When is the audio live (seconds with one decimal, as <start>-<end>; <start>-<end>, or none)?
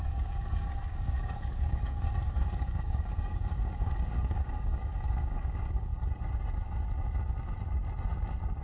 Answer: 5.9-8.6